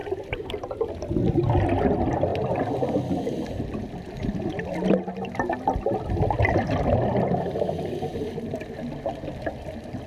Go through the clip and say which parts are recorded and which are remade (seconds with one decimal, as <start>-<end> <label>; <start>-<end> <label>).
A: 0.0-10.1 recorded